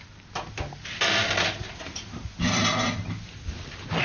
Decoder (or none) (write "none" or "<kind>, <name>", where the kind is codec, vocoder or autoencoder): none